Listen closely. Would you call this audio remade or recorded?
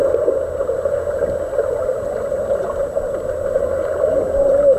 recorded